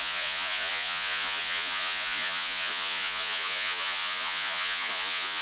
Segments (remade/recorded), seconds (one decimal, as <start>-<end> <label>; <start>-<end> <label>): 0.0-5.4 remade